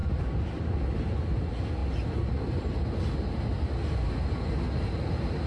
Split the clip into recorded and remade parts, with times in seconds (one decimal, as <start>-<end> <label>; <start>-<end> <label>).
0.0-5.5 recorded